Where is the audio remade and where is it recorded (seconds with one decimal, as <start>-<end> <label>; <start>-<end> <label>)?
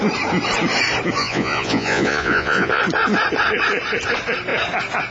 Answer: 0.0-1.2 recorded; 1.2-2.8 remade; 2.8-5.1 recorded